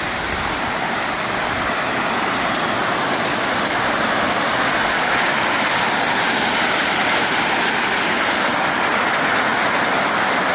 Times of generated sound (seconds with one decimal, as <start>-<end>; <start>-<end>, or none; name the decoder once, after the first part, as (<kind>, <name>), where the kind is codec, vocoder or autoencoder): none